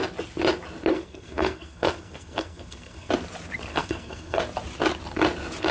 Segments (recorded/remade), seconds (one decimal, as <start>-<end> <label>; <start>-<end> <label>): 0.0-0.9 recorded; 0.9-3.1 remade; 3.1-3.7 recorded; 3.7-4.4 remade; 4.4-5.7 recorded